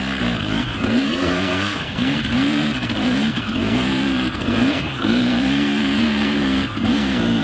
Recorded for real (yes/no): no